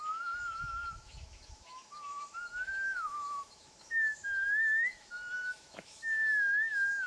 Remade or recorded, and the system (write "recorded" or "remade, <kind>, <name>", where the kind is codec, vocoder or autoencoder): remade, autoencoder, DAC-VAE